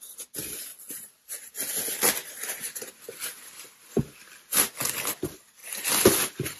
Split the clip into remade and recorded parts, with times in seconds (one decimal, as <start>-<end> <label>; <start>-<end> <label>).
0.0-6.6 recorded